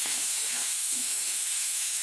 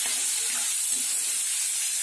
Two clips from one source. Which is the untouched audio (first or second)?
second